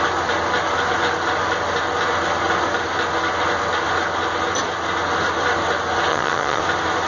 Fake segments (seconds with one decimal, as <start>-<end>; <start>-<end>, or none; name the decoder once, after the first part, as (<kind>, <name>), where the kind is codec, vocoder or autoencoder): 6.1-6.6 (vocoder, HiFi-GAN)